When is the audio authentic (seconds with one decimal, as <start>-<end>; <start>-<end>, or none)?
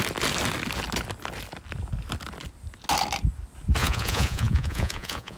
0.0-3.8